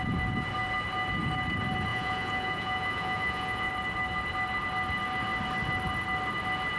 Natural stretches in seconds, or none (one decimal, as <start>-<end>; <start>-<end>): 0.0-1.9; 3.7-6.8